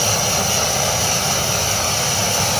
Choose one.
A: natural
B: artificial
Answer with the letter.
A